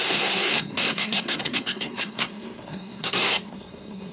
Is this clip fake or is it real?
fake